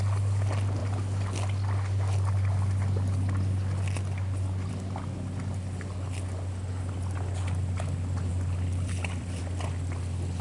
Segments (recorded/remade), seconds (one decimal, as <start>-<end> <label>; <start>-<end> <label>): 0.0-8.3 recorded; 8.3-9.4 remade; 9.4-10.4 recorded